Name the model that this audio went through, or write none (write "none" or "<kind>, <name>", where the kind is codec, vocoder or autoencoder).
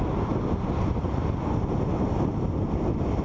none